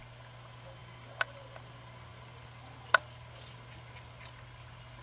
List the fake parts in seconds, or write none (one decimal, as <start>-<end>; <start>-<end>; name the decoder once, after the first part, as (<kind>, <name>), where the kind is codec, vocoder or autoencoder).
none